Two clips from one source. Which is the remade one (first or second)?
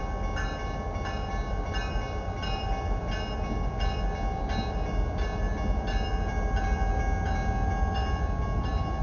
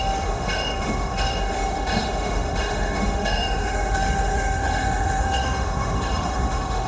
second